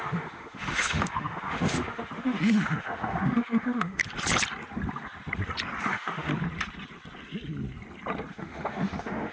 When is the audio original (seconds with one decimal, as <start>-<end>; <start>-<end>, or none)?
4.0-5.8; 6.3-8.3

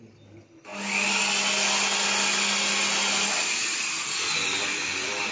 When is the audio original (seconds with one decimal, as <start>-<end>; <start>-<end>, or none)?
0.0-5.3

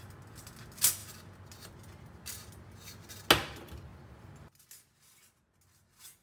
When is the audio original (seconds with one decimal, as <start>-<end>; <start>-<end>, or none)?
0.0-6.2

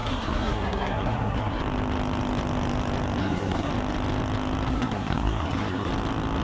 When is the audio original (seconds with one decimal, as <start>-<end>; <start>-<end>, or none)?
1.6-3.2; 3.7-4.7; 5.9-6.4

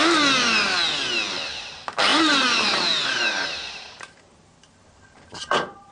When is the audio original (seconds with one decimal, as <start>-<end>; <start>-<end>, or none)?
0.0-2.1; 4.2-4.8

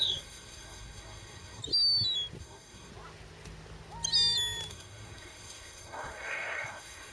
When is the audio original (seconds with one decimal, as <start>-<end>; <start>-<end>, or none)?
1.6-2.4; 2.9-4.7

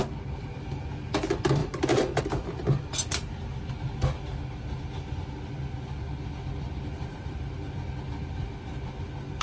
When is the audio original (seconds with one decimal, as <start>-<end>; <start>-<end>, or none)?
0.0-1.6; 2.2-6.6; 7.4-9.4

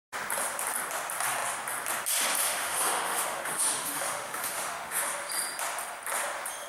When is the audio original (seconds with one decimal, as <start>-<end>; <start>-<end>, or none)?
0.0-2.4; 5.3-6.7